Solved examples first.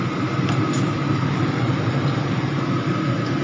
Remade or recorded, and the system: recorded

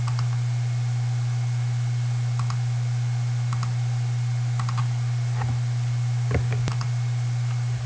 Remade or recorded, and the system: recorded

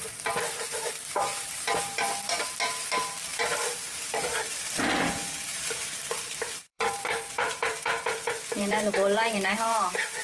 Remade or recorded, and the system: remade, vocoder, BigVGAN v2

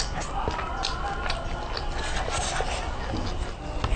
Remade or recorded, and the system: recorded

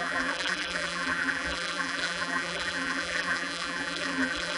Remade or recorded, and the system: remade, vocoder, BigVGAN v2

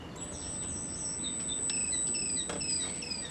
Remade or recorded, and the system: recorded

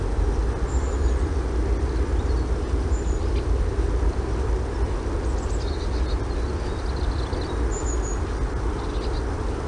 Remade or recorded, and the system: recorded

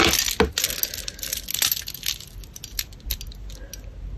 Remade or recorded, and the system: recorded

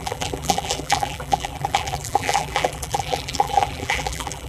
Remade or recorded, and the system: remade, vocoder, BigVGAN v2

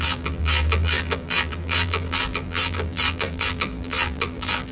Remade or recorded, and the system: remade, vocoder, BigVGAN v2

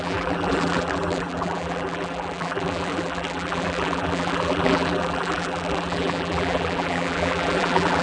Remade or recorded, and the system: remade, vocoder, BigVGAN v2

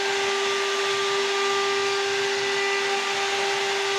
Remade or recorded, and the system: recorded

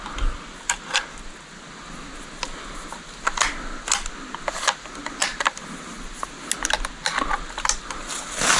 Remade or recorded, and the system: recorded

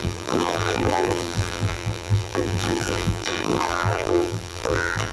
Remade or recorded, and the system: remade, vocoder, BigVGAN v2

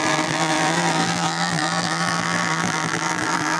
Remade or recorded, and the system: remade, vocoder, BigVGAN v2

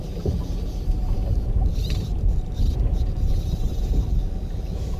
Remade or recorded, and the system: remade, vocoder, BigVGAN v2